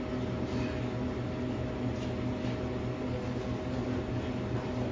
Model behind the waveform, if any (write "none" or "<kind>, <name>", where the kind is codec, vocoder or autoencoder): none